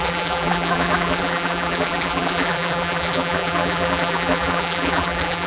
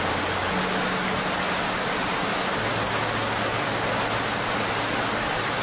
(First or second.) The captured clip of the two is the second